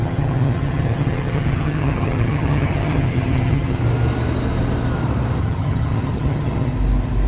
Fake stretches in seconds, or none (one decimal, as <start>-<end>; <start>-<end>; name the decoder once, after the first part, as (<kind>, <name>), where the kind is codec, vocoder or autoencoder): 0.0-3.8 (vocoder, HiFi-GAN); 5.4-6.7